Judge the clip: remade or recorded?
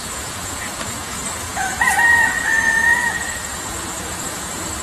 remade